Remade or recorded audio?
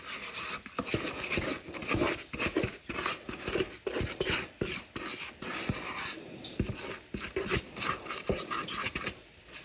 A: recorded